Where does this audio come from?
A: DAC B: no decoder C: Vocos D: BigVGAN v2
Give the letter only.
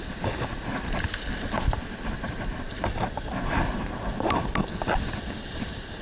B